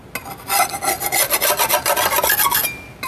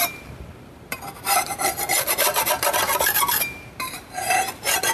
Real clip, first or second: first